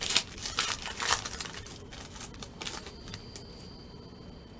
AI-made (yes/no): no